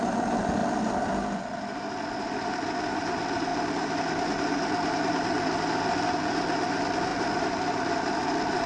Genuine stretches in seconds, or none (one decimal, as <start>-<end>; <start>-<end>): 0.0-0.6; 2.2-7.1